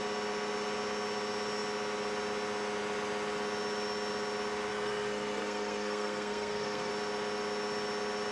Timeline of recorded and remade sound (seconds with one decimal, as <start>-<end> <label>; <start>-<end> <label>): 0.0-4.7 recorded; 4.7-6.9 remade; 6.9-8.3 recorded